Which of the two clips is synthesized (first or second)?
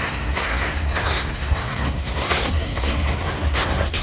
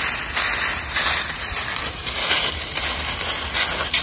first